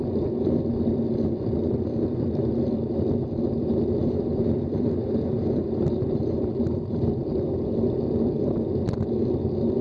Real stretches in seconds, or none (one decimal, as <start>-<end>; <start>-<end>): 0.0-4.0; 7.0-9.8